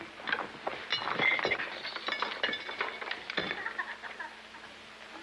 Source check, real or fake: real